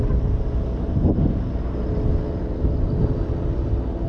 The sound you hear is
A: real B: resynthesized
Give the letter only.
A